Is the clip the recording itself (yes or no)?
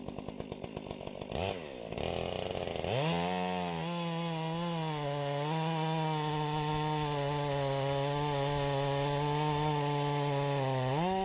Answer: yes